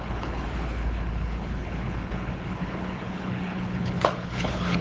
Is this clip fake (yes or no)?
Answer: yes